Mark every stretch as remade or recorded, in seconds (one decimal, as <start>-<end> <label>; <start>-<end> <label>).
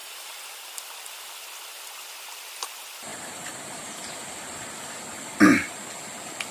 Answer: 0.0-0.8 remade; 0.8-3.1 recorded; 3.1-4.1 remade; 4.1-6.5 recorded